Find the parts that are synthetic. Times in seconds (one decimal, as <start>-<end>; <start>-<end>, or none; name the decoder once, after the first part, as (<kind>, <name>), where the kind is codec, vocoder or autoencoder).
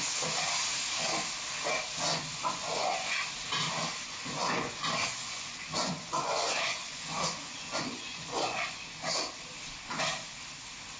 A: 2.1-3.1 (vocoder, Vocos); 4.1-8.8